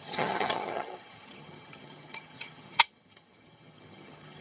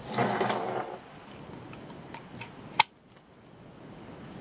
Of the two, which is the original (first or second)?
second